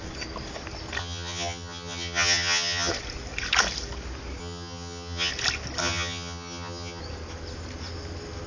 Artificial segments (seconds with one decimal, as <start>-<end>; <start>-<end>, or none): 1.0-2.9; 4.4-5.3; 5.8-7.0